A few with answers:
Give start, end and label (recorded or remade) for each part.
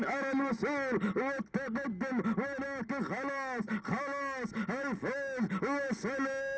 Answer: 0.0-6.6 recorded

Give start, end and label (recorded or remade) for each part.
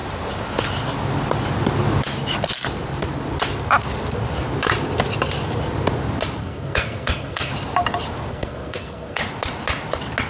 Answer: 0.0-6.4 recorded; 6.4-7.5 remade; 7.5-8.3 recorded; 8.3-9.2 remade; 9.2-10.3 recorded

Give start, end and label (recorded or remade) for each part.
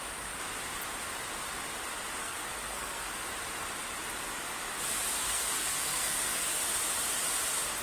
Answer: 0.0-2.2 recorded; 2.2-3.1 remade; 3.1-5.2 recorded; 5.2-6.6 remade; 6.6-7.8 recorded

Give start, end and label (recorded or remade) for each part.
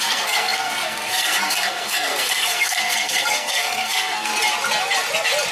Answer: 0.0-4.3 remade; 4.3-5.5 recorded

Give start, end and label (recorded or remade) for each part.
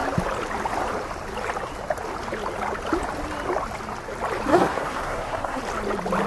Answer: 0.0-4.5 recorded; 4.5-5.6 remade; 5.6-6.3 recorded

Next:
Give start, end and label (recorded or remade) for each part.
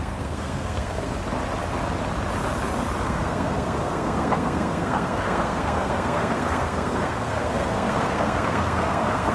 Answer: 0.0-1.2 remade; 1.2-3.0 recorded; 3.0-9.3 remade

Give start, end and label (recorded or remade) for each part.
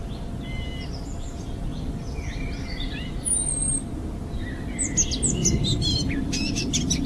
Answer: 0.0-7.1 recorded